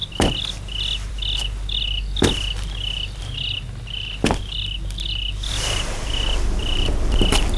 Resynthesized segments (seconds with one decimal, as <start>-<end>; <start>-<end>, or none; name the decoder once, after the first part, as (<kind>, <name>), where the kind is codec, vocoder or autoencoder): none